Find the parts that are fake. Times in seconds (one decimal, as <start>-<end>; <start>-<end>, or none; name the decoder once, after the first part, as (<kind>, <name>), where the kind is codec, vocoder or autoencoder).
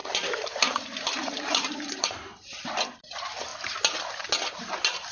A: 0.0-3.1 (vocoder, BigVGAN v2)